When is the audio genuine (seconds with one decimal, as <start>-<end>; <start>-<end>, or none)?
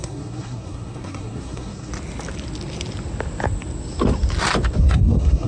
1.9-4.8